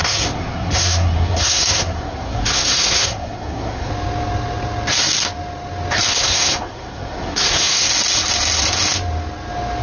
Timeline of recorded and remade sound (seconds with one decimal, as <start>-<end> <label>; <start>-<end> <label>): 0.0-3.9 remade; 3.9-6.1 recorded; 6.1-7.9 remade; 7.9-9.8 recorded